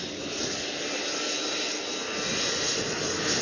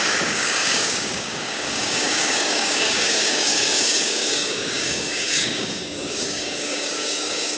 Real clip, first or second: first